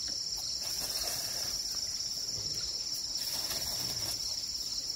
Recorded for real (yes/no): yes